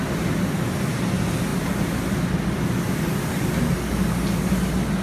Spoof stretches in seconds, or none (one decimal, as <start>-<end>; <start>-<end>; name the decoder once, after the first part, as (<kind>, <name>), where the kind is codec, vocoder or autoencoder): none